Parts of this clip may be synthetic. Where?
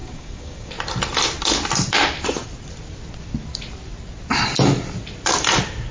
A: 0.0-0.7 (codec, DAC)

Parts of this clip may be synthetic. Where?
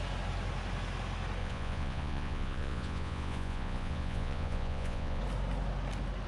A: 1.4-5.2 (vocoder, Vocos)